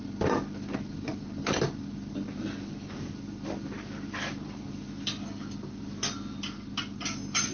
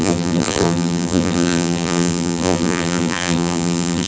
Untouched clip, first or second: first